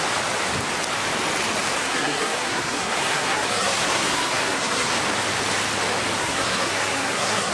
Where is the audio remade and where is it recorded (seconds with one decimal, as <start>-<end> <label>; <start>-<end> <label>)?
0.0-1.8 recorded; 1.8-4.9 remade; 4.9-6.2 recorded; 6.2-7.5 remade